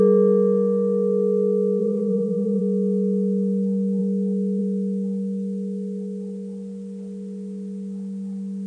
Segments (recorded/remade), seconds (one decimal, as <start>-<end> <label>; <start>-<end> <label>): 0.0-1.8 recorded; 1.8-2.6 remade; 2.6-8.7 recorded

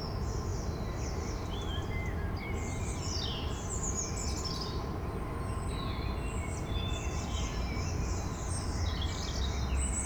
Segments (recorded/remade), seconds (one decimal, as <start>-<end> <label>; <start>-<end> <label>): 0.0-10.1 recorded